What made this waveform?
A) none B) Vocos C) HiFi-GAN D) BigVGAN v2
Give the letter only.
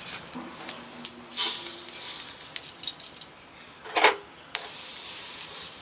A